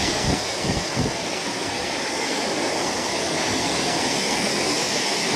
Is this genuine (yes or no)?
no